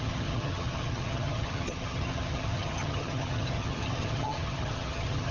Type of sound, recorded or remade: remade